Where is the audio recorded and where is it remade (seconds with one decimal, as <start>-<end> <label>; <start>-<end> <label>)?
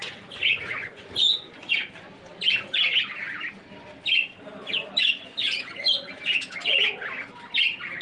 0.0-1.8 remade; 1.8-5.0 recorded; 5.0-6.2 remade; 6.2-8.0 recorded